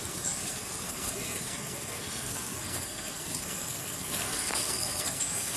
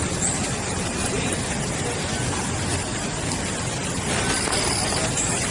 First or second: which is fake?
first